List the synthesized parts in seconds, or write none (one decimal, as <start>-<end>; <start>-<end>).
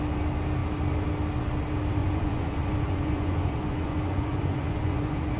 2.0-5.4